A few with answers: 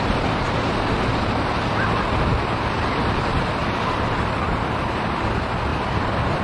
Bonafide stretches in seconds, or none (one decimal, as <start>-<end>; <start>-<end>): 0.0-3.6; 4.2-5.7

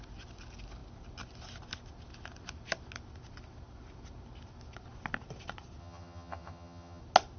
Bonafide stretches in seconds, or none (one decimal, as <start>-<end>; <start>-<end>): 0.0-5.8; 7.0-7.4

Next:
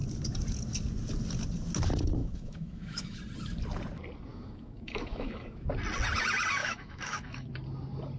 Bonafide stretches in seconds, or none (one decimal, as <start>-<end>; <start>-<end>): 0.0-2.2; 3.2-4.3; 5.7-6.6; 7.5-8.2